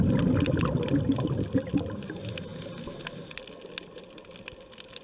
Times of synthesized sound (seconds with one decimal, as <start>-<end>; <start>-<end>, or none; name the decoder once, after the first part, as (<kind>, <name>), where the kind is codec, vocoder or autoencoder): none

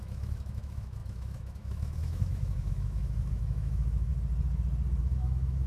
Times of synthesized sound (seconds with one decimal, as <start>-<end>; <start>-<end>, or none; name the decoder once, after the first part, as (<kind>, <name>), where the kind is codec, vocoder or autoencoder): 0.0-4.1 (autoencoder, DAC-VAE); 5.0-5.7

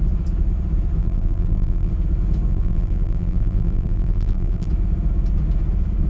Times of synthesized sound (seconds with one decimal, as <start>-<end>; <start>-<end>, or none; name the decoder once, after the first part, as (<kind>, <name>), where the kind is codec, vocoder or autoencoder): 1.0-1.9 (vocoder, BigVGAN v2); 2.5-4.7

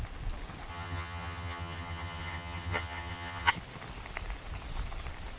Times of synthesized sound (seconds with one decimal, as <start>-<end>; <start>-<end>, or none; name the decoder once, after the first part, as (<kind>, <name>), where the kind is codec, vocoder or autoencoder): 0.7-3.5 (vocoder, HiFi-GAN)

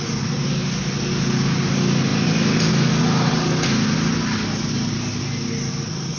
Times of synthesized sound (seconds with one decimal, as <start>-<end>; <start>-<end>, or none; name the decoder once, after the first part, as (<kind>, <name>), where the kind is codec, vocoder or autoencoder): none